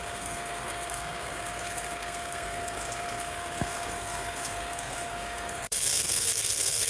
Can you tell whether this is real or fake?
fake